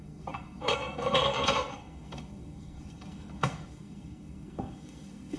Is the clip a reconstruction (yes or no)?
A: yes